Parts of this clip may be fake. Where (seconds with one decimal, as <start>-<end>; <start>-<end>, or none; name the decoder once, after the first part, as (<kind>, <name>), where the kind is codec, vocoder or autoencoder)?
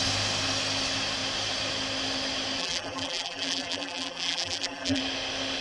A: 2.6-5.0 (vocoder, BigVGAN v2)